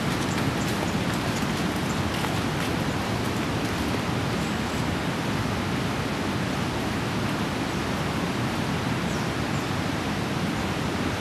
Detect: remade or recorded recorded